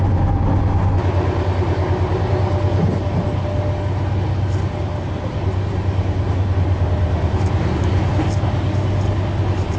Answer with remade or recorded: recorded